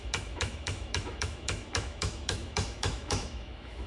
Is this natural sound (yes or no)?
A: no